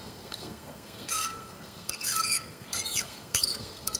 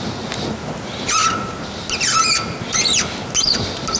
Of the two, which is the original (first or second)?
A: second